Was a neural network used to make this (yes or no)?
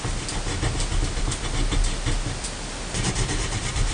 no